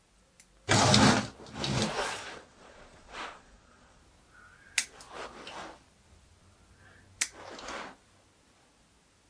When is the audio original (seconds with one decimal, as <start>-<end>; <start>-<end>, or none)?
0.0-1.9; 4.0-9.3